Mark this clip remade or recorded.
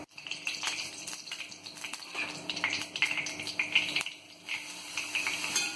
remade